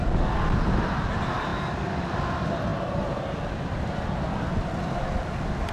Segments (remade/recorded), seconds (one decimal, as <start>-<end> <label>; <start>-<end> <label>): 0.0-5.7 recorded